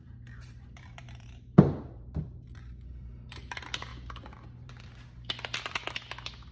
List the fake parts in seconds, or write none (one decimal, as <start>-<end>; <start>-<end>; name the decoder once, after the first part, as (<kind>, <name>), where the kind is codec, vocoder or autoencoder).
0.0-3.5 (vocoder, BigVGAN v2); 3.9-4.7